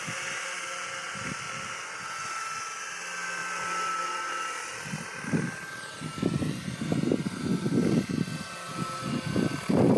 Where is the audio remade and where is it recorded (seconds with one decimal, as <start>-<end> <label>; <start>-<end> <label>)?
0.0-10.0 recorded